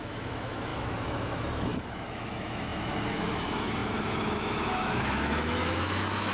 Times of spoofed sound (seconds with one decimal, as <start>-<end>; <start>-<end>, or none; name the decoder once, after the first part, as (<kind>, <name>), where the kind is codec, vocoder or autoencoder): 0.0-6.3 (autoencoder, DAC-VAE)